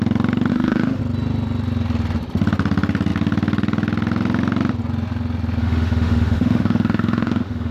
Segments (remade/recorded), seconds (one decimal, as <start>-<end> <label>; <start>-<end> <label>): 0.0-0.5 recorded; 0.5-1.0 remade; 1.0-5.6 recorded; 5.6-7.7 remade